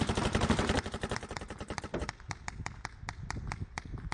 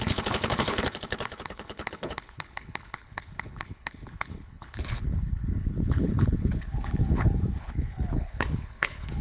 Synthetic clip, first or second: second